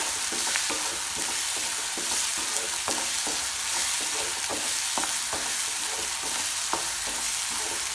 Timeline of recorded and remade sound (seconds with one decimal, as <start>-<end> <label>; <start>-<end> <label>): 0.0-7.9 recorded